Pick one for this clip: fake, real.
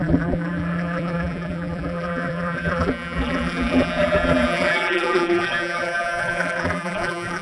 fake